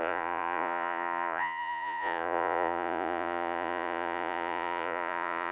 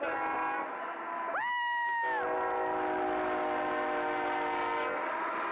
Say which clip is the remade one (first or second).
first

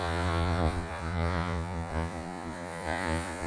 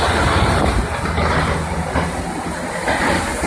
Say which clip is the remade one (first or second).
first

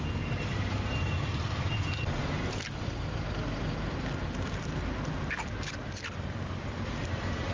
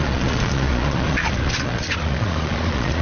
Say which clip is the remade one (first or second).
second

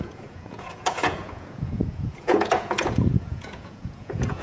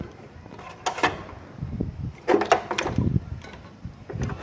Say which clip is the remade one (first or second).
first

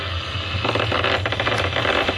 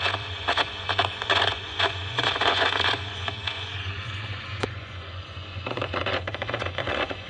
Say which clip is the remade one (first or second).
second